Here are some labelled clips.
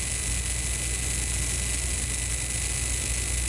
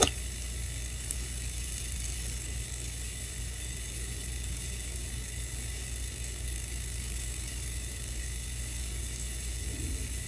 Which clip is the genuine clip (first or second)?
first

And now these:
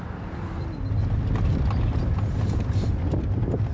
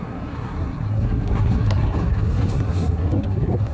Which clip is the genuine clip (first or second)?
first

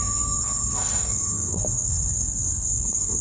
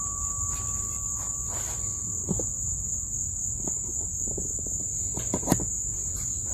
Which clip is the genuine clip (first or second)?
second